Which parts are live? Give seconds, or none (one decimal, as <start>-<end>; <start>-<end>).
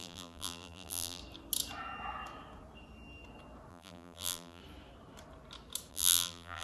1.2-3.7; 4.6-5.9